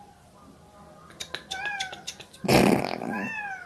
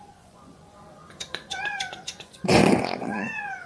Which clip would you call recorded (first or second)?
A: first